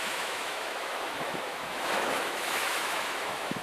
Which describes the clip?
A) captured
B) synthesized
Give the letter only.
B